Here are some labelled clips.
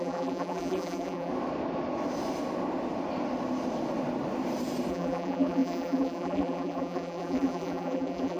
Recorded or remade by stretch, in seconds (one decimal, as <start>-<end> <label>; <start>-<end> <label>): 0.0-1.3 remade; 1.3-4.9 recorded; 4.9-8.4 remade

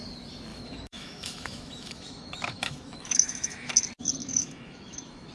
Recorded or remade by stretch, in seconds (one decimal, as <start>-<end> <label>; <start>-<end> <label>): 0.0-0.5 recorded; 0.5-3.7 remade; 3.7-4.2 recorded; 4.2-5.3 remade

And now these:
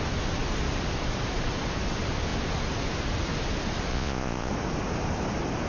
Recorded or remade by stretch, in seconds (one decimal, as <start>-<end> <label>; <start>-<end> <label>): 0.0-3.9 recorded; 3.9-4.5 remade; 4.5-5.7 recorded